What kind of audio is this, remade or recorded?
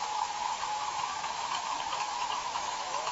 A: remade